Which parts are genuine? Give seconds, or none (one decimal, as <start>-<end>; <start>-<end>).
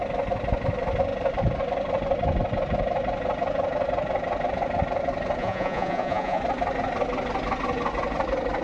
0.0-5.4; 6.4-8.6